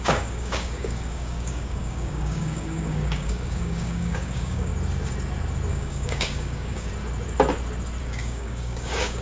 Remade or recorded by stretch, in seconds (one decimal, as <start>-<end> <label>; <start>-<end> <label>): 0.0-4.7 remade; 4.7-5.7 recorded; 5.7-6.9 remade; 6.9-8.0 recorded; 8.0-9.2 remade